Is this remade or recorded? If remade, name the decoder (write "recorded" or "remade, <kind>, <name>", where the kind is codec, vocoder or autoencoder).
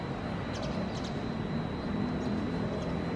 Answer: recorded